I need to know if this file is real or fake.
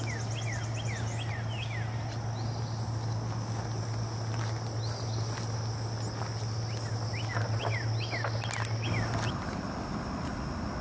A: real